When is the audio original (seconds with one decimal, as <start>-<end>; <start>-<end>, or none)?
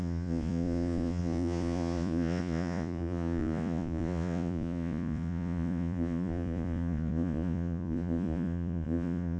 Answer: none